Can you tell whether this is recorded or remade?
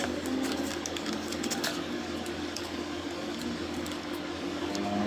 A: remade